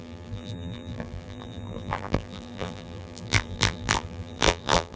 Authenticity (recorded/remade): remade